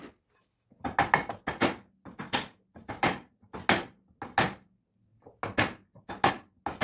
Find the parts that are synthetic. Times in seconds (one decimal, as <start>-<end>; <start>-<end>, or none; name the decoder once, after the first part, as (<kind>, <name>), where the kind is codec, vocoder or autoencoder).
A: none